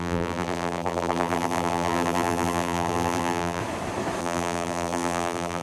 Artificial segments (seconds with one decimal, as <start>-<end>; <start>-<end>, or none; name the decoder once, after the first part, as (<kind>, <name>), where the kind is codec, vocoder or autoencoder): 0.0-3.6 (vocoder, BigVGAN v2); 4.2-5.6